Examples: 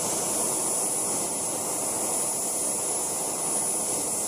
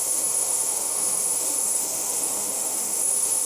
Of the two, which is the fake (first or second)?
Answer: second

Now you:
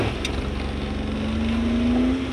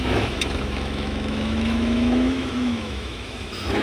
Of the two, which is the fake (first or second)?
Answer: second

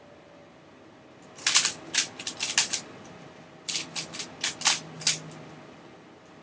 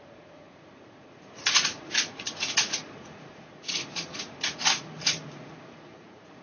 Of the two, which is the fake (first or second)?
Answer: second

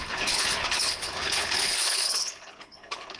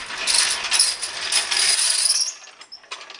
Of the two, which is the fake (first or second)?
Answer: first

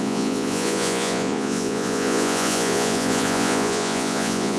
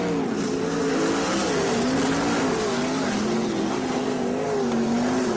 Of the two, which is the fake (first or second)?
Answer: first